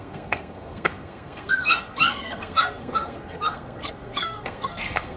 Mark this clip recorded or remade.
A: remade